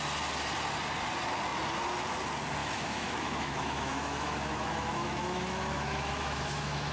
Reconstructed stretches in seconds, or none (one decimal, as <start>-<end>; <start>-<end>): 2.6-6.9